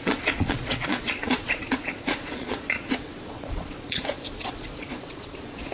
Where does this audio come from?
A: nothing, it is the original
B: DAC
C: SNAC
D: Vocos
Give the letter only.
D